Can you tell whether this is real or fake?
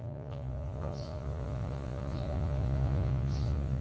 fake